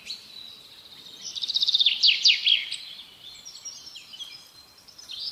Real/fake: real